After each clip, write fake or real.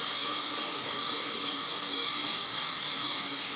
fake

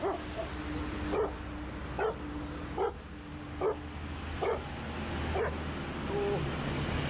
real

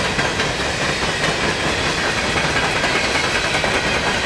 real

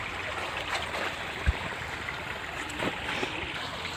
real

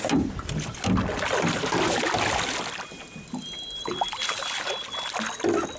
real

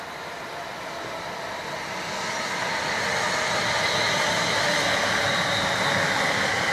real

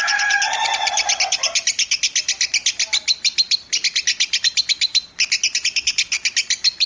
real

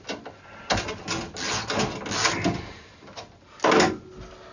real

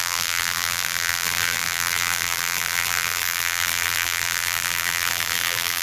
fake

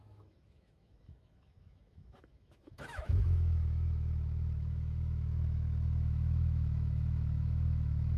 fake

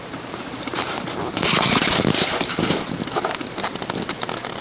fake